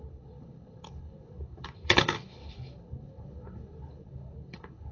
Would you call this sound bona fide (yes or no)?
no